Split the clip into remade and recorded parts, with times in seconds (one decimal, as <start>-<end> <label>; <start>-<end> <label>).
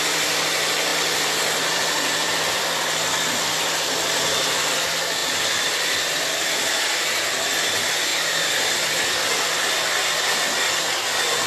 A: 0.0-0.9 recorded; 0.9-2.8 remade; 2.8-5.2 recorded; 5.2-6.8 remade; 6.8-8.1 recorded; 8.1-8.9 remade; 8.9-11.5 recorded